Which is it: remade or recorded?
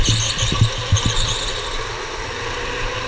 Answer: recorded